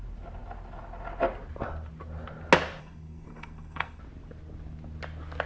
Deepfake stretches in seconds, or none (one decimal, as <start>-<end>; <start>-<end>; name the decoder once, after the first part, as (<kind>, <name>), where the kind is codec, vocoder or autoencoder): 2.8-4.0 (codec, SNAC)